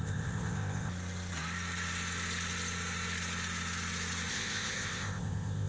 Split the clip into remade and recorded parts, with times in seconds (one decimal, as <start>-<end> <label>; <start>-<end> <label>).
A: 0.0-0.9 remade; 0.9-4.3 recorded; 4.3-5.7 remade